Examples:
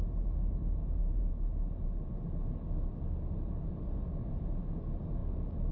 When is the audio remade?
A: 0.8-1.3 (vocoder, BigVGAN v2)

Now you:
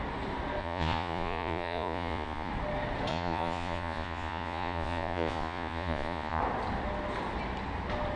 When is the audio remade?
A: 0.6-2.5 (vocoder, Vocos); 3.1-6.4

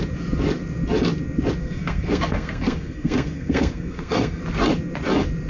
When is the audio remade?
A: 1.6-4.4 (codec, SNAC)

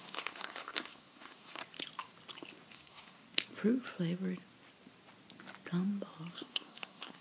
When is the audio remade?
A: 0.0-1.6 (codec, SNAC); 2.7-3.2; 6.3-7.2

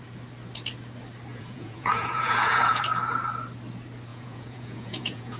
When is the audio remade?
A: 1.3-2.8 (vocoder, Vocos); 4.1-5.4